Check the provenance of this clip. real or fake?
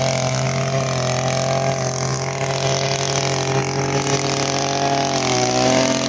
real